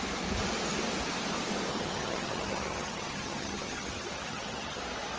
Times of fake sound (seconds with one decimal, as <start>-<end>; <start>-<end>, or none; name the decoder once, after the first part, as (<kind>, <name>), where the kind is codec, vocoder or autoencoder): 1.7-4.8 (vocoder, HiFi-GAN)